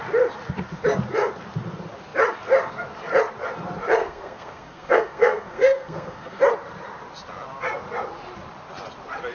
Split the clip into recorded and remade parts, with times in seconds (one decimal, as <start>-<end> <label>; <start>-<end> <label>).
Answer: 0.0-4.0 recorded; 4.0-6.4 remade; 6.4-9.3 recorded